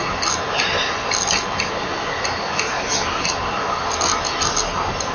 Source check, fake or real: real